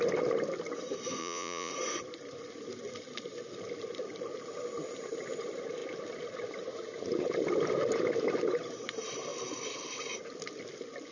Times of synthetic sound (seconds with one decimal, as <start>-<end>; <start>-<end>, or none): 1.2-1.7